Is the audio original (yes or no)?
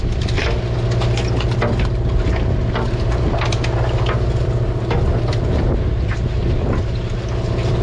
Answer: yes